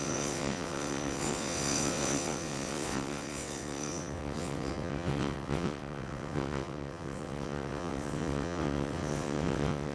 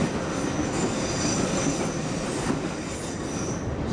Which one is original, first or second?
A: second